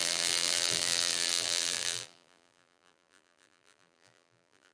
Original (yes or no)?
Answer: no